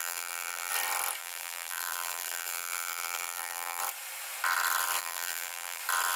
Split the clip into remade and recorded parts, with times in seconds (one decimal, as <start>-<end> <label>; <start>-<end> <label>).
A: 0.0-0.7 remade; 0.7-1.2 recorded; 1.2-3.8 remade; 3.8-5.0 recorded; 5.0-5.8 remade; 5.8-6.2 recorded

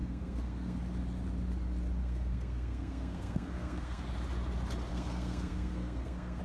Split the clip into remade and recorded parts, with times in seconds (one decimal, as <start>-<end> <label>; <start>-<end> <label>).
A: 0.0-0.8 remade; 0.8-2.0 recorded; 2.0-4.0 remade; 4.0-4.9 recorded; 4.9-6.4 remade